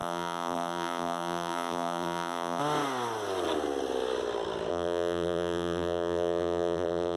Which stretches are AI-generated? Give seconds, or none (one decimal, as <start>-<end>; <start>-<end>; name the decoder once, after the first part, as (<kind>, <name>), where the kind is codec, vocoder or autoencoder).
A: 0.0-2.6 (vocoder, BigVGAN v2); 4.7-7.2